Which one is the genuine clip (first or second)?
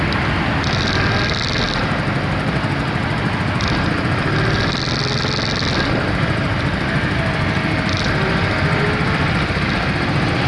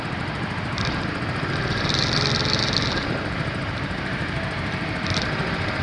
first